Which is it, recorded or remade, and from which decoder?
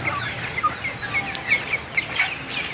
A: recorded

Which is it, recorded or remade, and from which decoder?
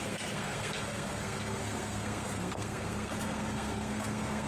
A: remade, codec, SNAC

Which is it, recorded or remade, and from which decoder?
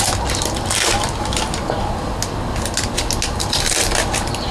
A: recorded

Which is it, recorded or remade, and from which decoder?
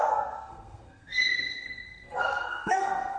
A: remade, codec, SNAC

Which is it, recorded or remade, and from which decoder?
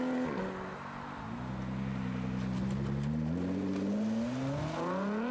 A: recorded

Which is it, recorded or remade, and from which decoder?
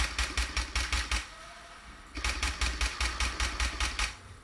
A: recorded